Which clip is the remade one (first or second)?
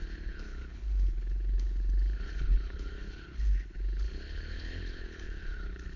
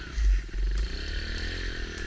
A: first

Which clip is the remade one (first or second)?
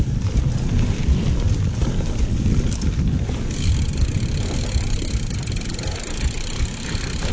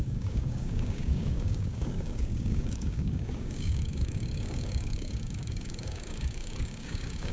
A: second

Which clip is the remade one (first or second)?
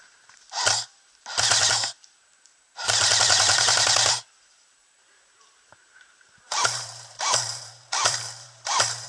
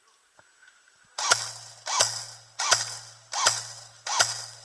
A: first